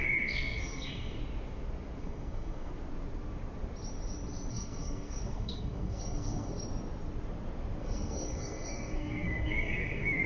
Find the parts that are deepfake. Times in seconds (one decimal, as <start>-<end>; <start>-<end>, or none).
0.0-1.2; 2.0-2.7; 4.5-6.5; 7.8-10.3